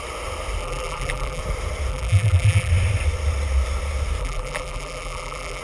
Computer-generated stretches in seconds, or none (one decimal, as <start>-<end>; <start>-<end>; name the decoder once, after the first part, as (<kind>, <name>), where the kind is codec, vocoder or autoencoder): 0.6-1.4 (vocoder, BigVGAN v2); 1.9-2.7; 4.2-5.6

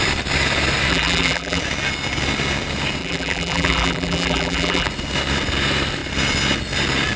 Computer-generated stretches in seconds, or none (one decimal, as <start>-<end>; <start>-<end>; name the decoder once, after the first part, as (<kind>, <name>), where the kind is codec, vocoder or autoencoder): 0.9-1.6 (vocoder, BigVGAN v2); 3.0-4.9

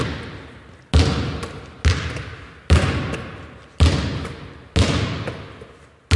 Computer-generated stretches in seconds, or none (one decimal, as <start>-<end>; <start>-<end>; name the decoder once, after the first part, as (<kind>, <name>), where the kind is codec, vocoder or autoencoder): none

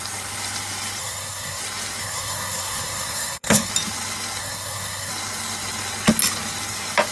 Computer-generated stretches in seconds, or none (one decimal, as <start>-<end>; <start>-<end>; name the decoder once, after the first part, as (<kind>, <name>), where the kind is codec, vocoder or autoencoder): 1.0-1.6 (codec, SNAC); 2.0-3.7; 4.4-5.1

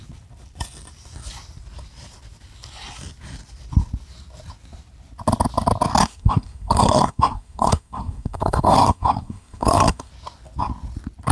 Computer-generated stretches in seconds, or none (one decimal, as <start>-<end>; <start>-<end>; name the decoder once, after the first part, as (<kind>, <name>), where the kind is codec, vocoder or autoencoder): 6.0-10.1 (codec, SNAC)

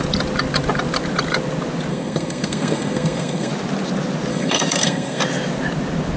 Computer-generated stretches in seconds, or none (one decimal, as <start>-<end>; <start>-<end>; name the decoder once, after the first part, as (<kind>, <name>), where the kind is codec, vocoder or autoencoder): 1.9-3.5 (codec, SNAC); 4.3-5.2

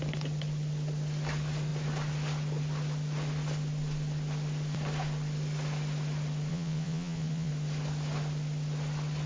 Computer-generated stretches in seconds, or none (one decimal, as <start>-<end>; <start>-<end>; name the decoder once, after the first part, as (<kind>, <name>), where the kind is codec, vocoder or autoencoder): 6.5-7.5 (vocoder, Vocos)

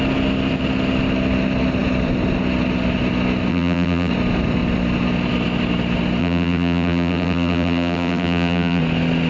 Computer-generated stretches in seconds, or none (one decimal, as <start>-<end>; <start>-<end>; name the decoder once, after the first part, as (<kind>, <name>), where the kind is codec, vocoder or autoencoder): 3.5-4.1 (vocoder, BigVGAN v2); 6.2-8.8